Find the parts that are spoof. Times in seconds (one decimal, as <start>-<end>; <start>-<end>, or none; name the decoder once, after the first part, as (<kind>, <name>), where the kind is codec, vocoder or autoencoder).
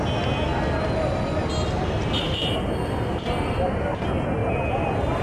4.4-5.2 (vocoder, BigVGAN v2)